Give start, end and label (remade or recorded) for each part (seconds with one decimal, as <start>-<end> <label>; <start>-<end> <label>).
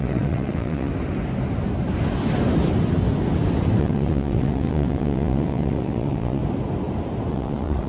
0.0-0.9 remade; 0.9-3.8 recorded; 3.8-6.4 remade; 6.4-7.3 recorded; 7.3-7.9 remade